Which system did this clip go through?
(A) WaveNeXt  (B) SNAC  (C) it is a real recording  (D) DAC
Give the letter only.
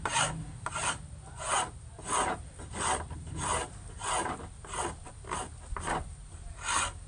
C